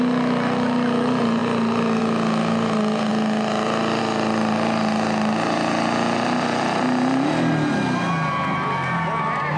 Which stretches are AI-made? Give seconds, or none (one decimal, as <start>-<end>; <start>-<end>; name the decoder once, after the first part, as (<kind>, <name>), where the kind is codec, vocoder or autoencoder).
none